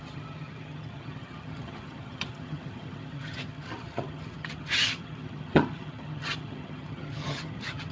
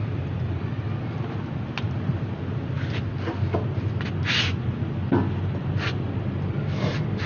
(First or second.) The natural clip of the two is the second